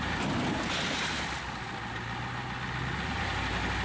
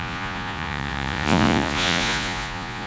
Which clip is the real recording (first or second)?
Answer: first